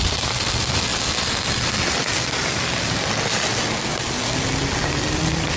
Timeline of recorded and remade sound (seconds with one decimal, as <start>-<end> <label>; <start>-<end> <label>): 0.0-5.6 recorded